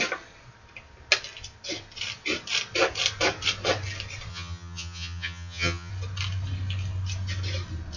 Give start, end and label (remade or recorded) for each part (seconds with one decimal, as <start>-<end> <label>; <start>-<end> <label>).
0.0-4.3 recorded; 4.3-5.9 remade; 5.9-8.0 recorded